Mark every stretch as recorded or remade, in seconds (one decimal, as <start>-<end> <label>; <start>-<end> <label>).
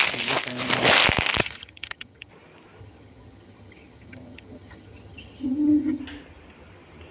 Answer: 0.0-1.4 recorded; 1.4-2.3 remade; 2.3-2.8 recorded; 2.8-6.0 remade; 6.0-7.1 recorded